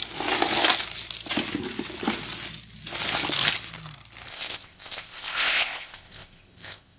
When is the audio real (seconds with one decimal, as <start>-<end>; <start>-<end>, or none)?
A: 0.0-4.3